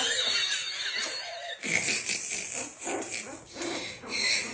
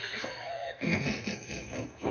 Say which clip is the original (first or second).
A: first